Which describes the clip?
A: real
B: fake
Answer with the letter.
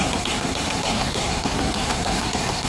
B